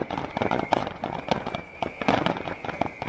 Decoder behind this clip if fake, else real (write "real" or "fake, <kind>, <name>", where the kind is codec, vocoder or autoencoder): fake, vocoder, Vocos